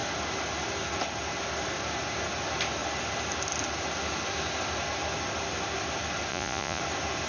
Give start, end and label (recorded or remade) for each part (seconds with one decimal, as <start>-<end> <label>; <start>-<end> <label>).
0.0-6.3 recorded; 6.3-6.8 remade; 6.8-7.3 recorded